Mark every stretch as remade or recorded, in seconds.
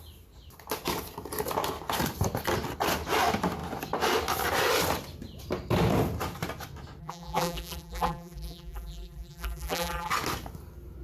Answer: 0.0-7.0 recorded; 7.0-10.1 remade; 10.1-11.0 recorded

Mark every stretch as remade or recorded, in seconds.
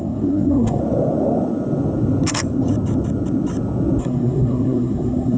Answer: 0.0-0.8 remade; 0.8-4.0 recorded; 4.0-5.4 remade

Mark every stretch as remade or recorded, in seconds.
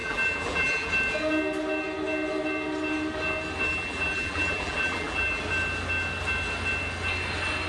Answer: 0.0-0.9 remade; 0.9-3.7 recorded; 3.7-5.4 remade; 5.4-7.7 recorded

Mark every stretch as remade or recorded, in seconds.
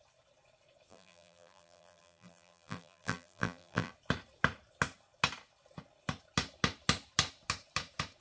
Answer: 0.0-0.9 recorded; 0.9-3.9 remade; 3.9-8.2 recorded